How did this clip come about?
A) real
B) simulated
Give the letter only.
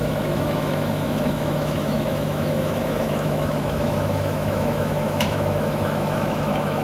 B